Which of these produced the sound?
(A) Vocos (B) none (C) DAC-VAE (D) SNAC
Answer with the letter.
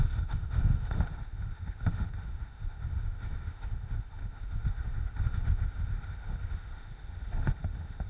C